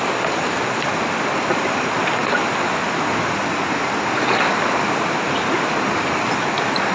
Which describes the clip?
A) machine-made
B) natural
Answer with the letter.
B